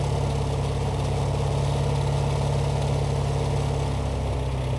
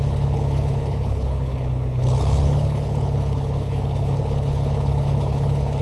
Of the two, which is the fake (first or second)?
second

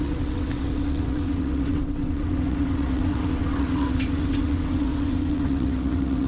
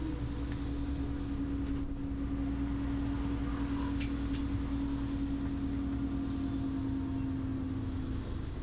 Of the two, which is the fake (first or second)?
first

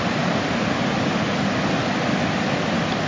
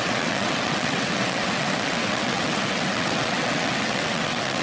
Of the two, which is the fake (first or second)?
second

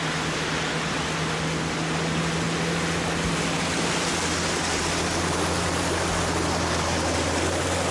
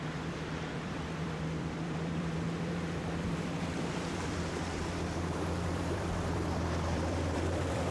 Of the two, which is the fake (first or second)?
second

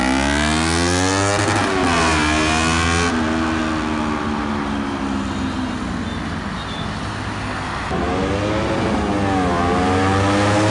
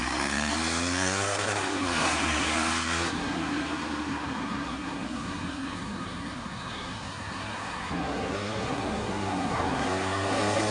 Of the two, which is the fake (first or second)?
second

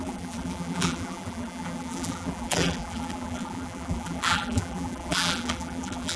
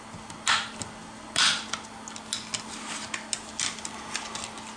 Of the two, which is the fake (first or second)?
first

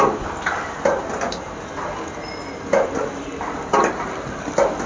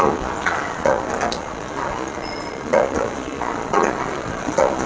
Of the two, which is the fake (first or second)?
second